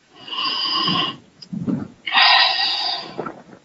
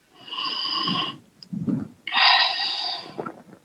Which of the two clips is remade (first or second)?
first